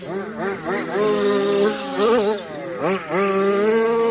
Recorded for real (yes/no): yes